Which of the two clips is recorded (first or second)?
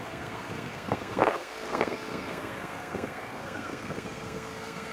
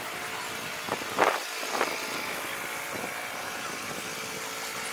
second